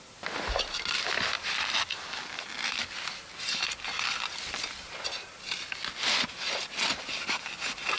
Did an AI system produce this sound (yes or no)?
no